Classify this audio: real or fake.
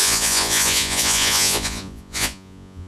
fake